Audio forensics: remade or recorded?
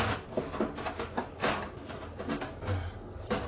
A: recorded